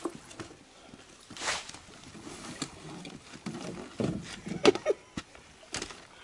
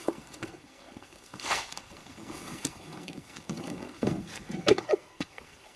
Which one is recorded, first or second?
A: first